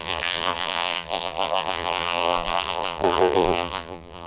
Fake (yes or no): yes